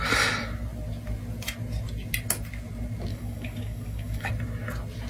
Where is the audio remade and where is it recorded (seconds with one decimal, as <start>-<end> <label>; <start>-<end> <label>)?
0.0-3.1 recorded; 3.1-4.3 remade; 4.3-5.1 recorded